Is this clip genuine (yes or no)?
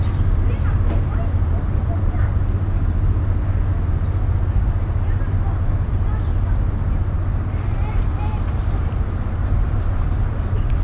yes